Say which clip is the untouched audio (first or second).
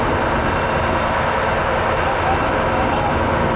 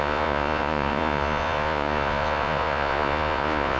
first